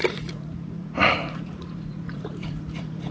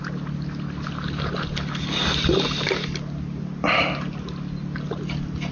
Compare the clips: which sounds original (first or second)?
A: second